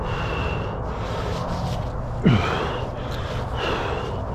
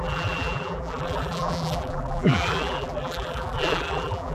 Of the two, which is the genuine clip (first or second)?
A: first